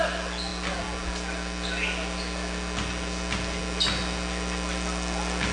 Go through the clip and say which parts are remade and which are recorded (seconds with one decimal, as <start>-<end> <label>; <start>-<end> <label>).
0.0-5.5 recorded